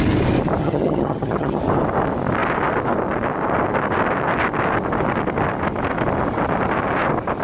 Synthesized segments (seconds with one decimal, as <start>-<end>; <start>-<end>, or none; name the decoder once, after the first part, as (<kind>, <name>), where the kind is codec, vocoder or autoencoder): 0.6-1.6 (vocoder, HiFi-GAN)